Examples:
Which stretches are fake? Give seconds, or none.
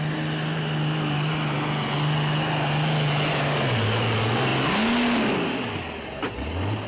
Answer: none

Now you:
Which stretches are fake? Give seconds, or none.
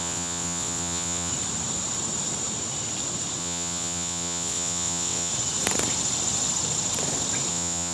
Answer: 0.0-1.3 (vocoder, WaveNeXt); 3.4-5.3; 7.5-7.9